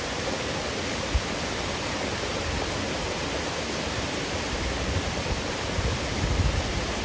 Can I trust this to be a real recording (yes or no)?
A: yes